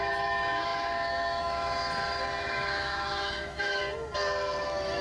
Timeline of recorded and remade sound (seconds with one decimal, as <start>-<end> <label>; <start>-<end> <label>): 0.0-1.8 remade; 1.8-2.4 recorded; 2.4-3.8 remade; 3.8-4.6 recorded; 4.6-5.0 remade

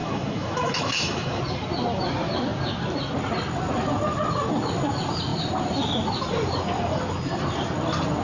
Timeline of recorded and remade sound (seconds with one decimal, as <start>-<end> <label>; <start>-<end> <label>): 0.0-1.4 remade; 1.4-8.2 recorded